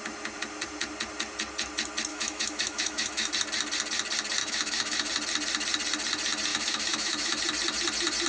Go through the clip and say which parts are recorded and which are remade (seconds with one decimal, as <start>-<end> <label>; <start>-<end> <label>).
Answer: 0.0-2.1 recorded; 2.1-3.3 remade; 3.3-4.4 recorded; 4.4-5.1 remade; 5.1-6.5 recorded; 6.5-7.4 remade; 7.4-8.3 recorded